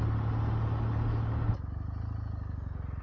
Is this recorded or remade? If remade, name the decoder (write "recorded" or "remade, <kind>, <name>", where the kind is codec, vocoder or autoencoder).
recorded